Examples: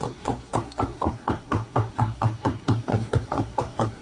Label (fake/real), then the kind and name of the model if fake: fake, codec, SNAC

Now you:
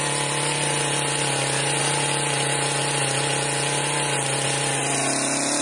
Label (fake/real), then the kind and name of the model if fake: real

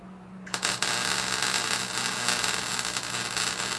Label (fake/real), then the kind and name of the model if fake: real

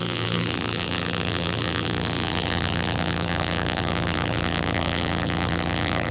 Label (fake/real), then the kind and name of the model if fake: fake, vocoder, BigVGAN v2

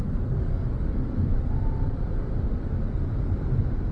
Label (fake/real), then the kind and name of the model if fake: real